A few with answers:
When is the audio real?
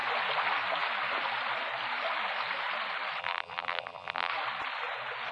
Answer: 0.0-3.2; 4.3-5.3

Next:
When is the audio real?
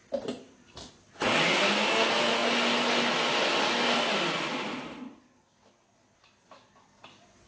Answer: 1.0-7.5